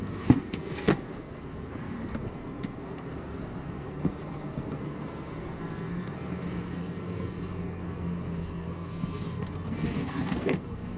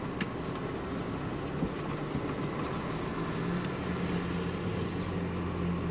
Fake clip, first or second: first